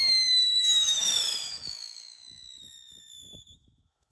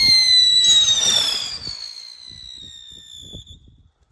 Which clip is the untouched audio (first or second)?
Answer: second